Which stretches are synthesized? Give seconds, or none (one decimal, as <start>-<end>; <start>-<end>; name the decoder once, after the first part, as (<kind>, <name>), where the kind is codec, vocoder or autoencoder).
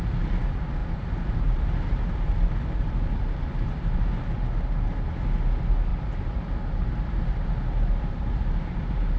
0.8-4.1 (vocoder, BigVGAN v2)